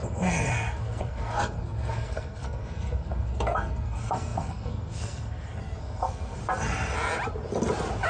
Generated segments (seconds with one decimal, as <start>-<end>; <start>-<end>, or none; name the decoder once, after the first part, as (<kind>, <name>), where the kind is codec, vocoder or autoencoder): 0.0-6.4 (codec, SNAC)

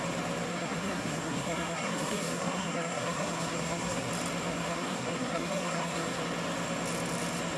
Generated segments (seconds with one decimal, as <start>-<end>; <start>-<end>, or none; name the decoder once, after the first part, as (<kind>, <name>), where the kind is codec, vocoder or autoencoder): 0.5-4.1 (codec, SNAC); 4.5-6.2

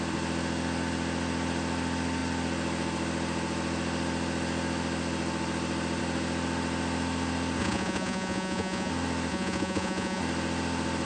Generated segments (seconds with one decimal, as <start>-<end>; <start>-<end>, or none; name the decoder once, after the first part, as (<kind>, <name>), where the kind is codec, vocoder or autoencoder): 7.6-8.9 (vocoder, Vocos); 9.3-10.2

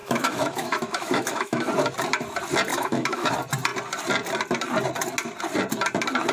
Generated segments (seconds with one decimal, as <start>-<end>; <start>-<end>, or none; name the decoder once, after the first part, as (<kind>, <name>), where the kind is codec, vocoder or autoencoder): 0.0-1.7 (autoencoder, DAC-VAE); 2.7-3.3

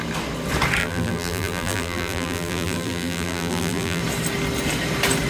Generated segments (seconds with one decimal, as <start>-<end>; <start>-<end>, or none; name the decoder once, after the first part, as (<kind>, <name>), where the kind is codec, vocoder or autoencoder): 0.8-4.0 (vocoder, BigVGAN v2)

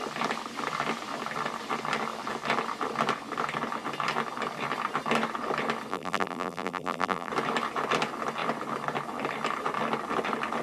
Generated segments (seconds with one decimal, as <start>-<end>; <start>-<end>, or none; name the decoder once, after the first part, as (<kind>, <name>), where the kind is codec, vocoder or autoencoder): 5.9-7.3 (vocoder, BigVGAN v2)

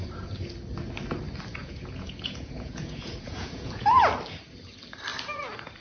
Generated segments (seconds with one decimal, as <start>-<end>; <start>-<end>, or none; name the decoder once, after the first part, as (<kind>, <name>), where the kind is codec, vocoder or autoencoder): 1.6-4.0 (vocoder, Vocos)